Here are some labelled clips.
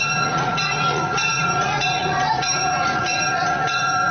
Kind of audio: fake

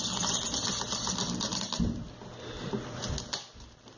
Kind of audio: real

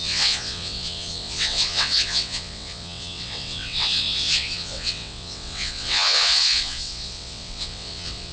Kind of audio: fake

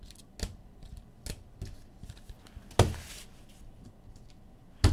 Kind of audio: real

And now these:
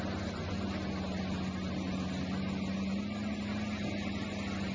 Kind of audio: real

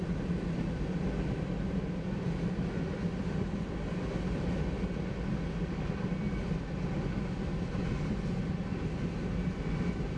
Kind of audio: real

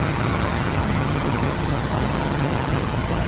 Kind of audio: fake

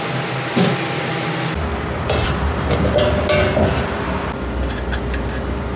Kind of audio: real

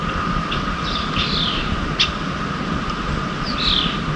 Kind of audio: real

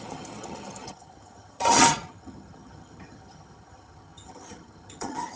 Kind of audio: fake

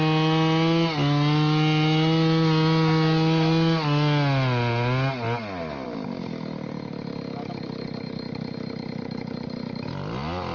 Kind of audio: real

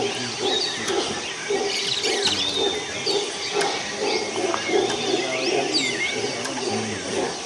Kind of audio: real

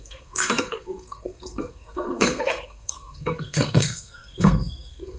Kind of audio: fake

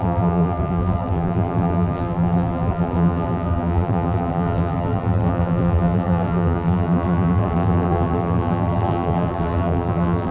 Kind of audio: fake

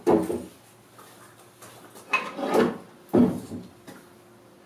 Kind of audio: real